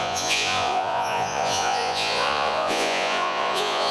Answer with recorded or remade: remade